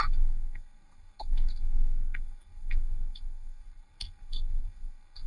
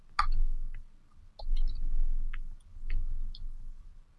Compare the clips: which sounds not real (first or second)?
first